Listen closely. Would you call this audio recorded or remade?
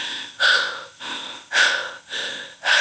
remade